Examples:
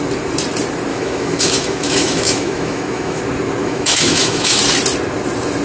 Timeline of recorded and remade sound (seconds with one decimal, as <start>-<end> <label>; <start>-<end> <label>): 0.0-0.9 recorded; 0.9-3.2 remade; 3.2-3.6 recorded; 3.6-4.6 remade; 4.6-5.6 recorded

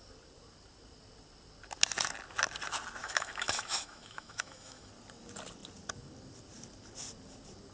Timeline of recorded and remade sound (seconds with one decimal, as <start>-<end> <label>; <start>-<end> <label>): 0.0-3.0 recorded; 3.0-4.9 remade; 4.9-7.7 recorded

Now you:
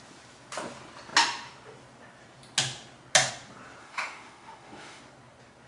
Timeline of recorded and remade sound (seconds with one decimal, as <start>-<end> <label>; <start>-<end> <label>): 0.0-3.8 recorded; 3.8-5.0 remade; 5.0-5.7 recorded

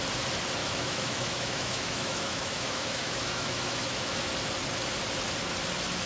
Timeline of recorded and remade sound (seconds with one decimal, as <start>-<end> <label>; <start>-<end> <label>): 0.0-0.6 recorded; 0.6-4.3 remade; 4.3-6.1 recorded

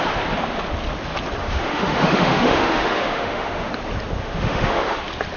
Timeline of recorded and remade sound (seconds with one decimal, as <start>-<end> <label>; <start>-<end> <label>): 0.0-1.4 recorded; 1.4-3.7 remade; 3.7-4.2 recorded; 4.2-5.0 remade; 5.0-5.4 recorded